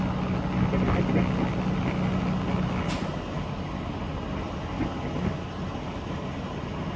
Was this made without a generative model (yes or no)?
yes